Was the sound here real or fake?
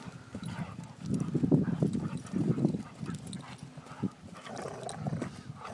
real